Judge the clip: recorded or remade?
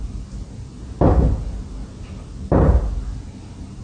recorded